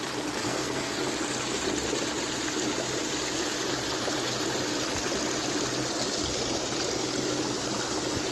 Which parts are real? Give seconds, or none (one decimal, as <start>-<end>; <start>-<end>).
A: 0.0-0.4; 1.0-8.3